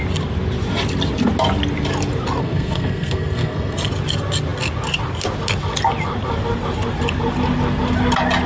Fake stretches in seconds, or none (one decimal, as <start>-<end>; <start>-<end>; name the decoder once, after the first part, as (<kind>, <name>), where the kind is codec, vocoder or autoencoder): 2.4-3.9 (codec, SNAC)